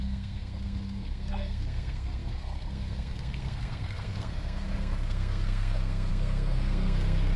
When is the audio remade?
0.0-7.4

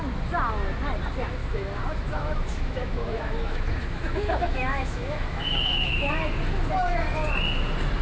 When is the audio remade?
1.4-6.1

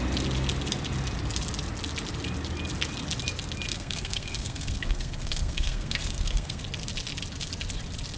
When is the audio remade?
3.7-6.6

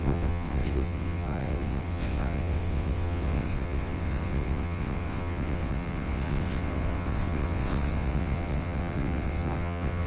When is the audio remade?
0.0-10.1